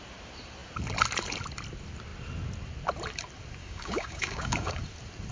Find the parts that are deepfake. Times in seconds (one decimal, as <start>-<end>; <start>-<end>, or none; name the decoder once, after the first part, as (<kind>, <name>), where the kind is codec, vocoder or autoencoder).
3.6-4.8 (codec, DAC)